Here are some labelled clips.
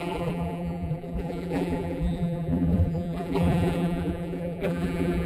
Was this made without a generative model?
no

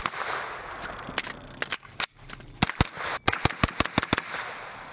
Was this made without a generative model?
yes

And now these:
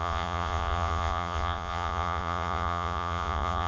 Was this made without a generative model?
no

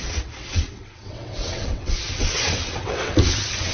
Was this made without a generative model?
no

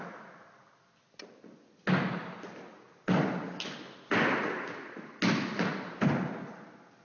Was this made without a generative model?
yes